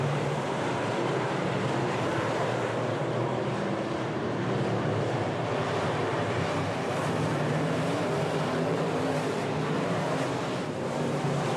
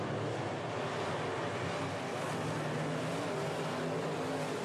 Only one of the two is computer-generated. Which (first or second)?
first